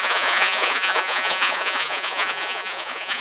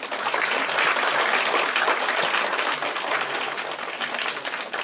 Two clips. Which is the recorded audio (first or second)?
second